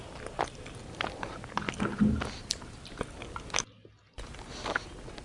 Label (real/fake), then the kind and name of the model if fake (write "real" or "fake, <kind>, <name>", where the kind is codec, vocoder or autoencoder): real